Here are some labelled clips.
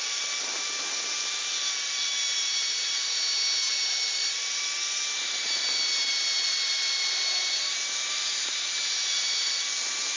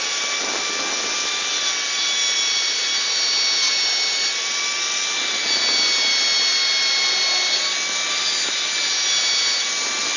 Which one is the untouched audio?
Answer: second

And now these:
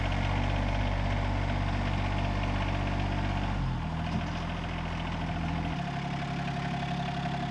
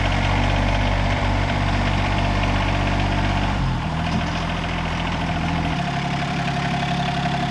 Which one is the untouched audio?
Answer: first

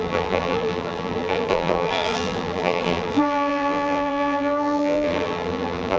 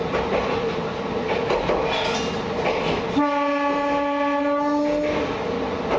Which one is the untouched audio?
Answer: second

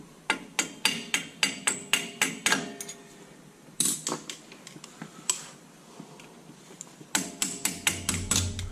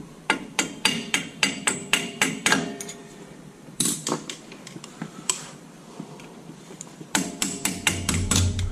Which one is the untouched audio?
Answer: first